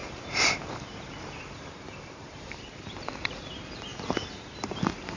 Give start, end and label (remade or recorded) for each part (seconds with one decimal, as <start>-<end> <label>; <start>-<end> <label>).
0.0-3.1 remade; 3.1-3.9 recorded; 3.9-4.8 remade; 4.8-5.2 recorded